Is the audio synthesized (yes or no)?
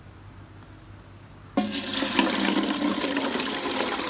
no